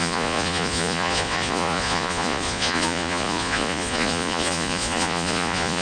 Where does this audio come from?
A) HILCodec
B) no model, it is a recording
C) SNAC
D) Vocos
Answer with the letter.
D